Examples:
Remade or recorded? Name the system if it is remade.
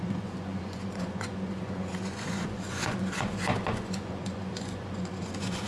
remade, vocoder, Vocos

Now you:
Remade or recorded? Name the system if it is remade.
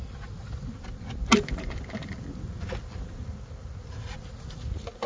recorded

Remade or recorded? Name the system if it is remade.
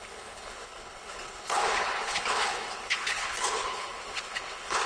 remade, codec, HILCodec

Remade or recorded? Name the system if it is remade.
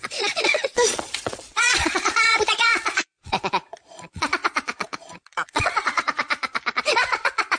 remade, vocoder, Vocos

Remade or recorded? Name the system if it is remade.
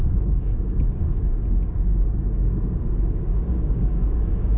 remade, codec, DAC